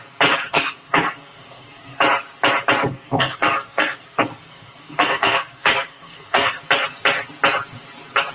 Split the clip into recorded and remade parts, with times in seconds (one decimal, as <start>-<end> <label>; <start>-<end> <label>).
0.0-0.5 recorded; 0.5-2.0 remade; 2.0-2.9 recorded; 2.9-6.6 remade; 6.6-8.3 recorded